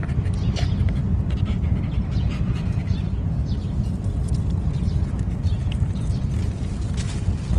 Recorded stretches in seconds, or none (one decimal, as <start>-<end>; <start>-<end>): 0.0-7.6